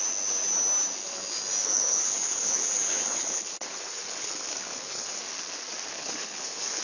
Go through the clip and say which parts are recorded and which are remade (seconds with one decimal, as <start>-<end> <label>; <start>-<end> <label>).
0.0-1.6 recorded; 1.6-5.2 remade; 5.2-5.9 recorded; 5.9-6.8 remade